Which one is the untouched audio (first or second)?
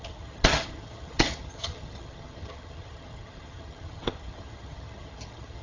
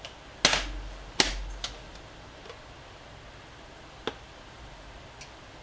second